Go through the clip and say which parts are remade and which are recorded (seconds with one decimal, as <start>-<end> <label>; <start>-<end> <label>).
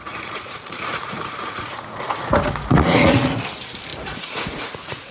0.0-3.1 remade; 3.1-3.9 recorded; 3.9-5.1 remade